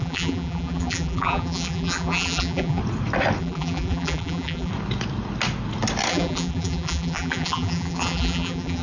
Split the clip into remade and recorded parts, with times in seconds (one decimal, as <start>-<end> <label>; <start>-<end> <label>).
0.0-2.8 remade; 2.8-3.4 recorded; 3.4-4.7 remade; 4.7-6.1 recorded; 6.1-8.8 remade